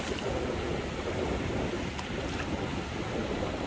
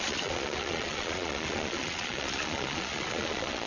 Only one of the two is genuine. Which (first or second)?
first